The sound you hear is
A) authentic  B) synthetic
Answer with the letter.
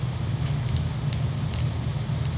A